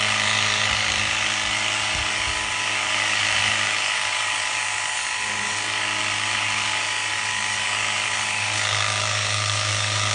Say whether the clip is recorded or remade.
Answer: remade